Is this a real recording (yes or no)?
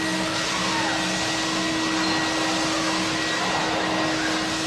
yes